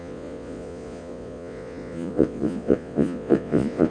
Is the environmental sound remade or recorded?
remade